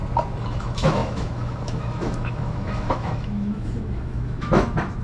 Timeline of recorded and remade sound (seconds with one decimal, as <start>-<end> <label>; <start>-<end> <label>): 0.0-0.5 recorded; 0.5-5.0 remade